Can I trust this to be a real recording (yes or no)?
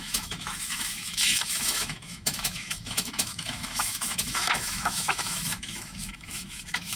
no